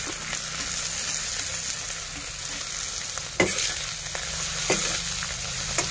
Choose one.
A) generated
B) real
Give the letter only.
B